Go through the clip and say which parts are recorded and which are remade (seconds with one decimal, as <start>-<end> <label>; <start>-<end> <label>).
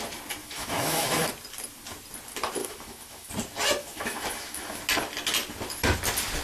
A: 0.0-0.4 recorded; 0.4-1.3 remade; 1.3-2.6 recorded; 2.6-3.3 remade; 3.3-3.8 recorded; 3.8-4.8 remade; 4.8-6.4 recorded